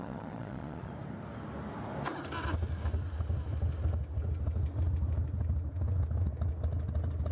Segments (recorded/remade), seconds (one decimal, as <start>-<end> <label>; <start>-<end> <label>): 0.0-0.9 remade; 0.9-7.3 recorded